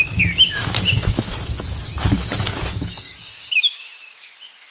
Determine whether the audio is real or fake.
fake